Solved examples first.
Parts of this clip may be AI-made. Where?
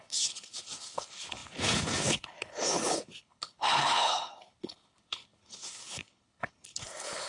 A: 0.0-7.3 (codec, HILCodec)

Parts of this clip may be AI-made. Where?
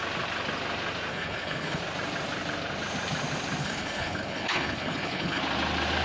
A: 1.1-1.8 (codec, HILCodec); 3.6-5.4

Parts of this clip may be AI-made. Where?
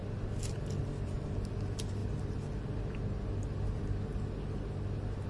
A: none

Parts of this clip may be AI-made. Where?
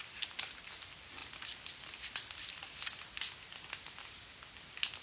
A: none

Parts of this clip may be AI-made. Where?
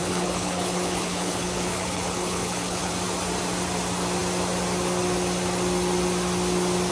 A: 0.0-2.9 (codec, HILCodec)